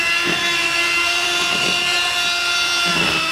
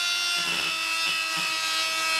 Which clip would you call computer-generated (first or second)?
first